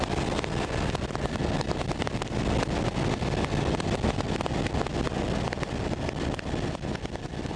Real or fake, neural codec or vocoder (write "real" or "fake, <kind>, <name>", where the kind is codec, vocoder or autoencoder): real